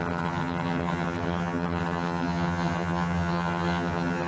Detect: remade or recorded remade